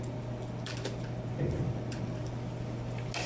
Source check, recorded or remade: recorded